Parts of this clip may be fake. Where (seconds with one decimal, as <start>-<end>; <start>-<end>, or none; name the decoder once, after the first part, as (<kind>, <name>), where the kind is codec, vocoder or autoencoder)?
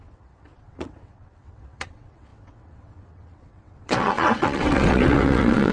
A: 0.0-5.7 (vocoder, WaveNeXt)